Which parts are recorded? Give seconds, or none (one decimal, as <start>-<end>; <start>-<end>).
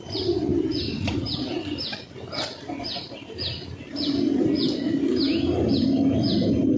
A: 0.0-6.8